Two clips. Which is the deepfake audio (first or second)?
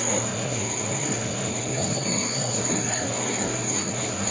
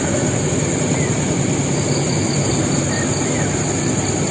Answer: first